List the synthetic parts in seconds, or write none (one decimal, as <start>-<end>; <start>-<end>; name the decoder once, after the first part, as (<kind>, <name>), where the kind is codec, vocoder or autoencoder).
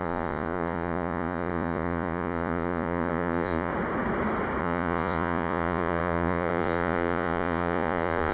0.0-3.7 (vocoder, Vocos); 4.6-8.3